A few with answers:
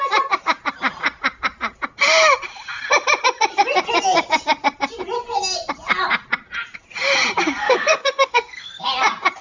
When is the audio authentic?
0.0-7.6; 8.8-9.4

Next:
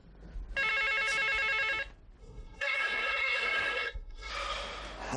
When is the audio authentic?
0.0-2.2; 4.3-5.2

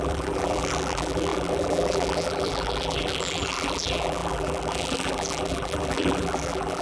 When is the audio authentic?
none